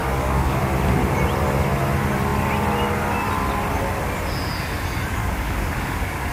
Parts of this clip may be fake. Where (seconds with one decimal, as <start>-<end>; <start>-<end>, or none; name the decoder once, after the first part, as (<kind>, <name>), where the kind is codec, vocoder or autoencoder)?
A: 0.0-0.6 (codec, DAC); 5.2-6.3